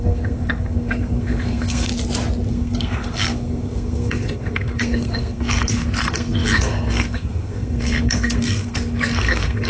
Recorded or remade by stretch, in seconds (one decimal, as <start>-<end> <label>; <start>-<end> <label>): 0.0-1.9 remade; 1.9-2.5 recorded; 2.5-9.7 remade

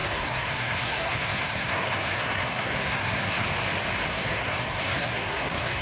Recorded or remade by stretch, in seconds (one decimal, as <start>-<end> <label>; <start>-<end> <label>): 0.0-3.5 remade; 3.5-4.1 recorded; 4.1-5.8 remade

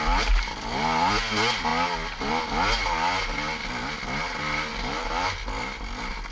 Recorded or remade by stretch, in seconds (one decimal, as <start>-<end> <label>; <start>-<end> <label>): 0.0-4.7 recorded; 4.7-5.3 remade; 5.3-6.3 recorded

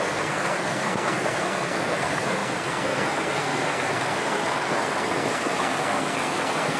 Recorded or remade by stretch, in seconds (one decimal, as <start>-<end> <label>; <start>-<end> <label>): 0.0-6.8 remade

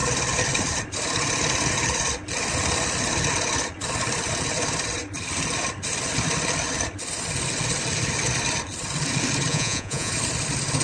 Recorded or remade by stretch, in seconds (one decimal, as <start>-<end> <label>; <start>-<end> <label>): 0.0-9.5 recorded; 9.5-10.1 remade; 10.1-10.8 recorded

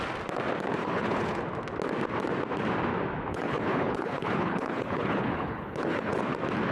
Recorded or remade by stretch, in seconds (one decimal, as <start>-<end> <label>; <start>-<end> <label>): 0.0-0.8 recorded; 0.8-1.4 remade; 1.4-3.3 recorded; 3.3-6.2 remade; 6.2-6.7 recorded